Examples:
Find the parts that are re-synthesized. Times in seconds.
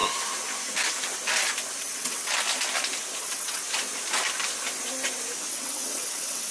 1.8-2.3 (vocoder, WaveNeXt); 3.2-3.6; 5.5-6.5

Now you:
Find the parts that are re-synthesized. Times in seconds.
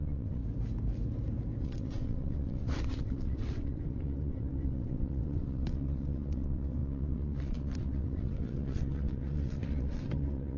0.0-0.4 (vocoder, WaveNeXt); 1.6-10.6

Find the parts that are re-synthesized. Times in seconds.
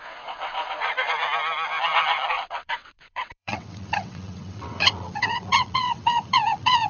0.0-0.9 (vocoder, WaveNeXt); 2.3-6.9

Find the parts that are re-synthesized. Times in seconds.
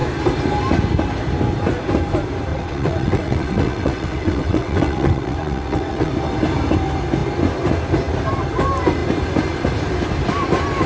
2.5-6.1 (vocoder, WaveNeXt)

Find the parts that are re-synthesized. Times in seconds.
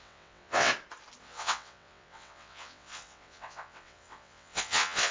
0.0-0.7 (vocoder, WaveNeXt); 1.2-5.1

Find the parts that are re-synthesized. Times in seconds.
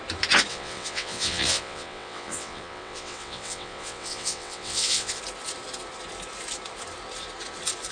0.5-5.2 (vocoder, WaveNeXt)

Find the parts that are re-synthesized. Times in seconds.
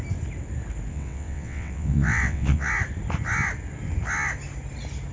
0.9-2.7 (vocoder, WaveNeXt)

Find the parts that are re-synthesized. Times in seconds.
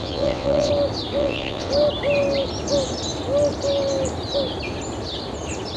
0.0-0.7 (vocoder, WaveNeXt); 1.2-1.7